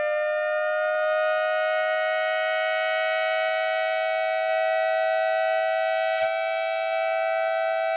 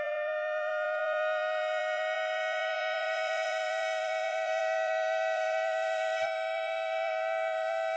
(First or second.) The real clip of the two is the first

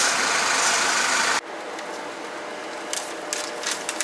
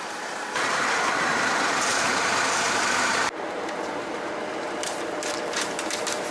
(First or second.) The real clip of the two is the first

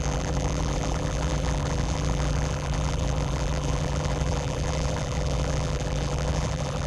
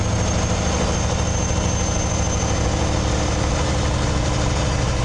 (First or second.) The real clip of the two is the second